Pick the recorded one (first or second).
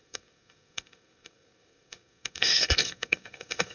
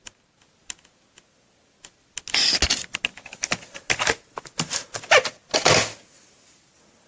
second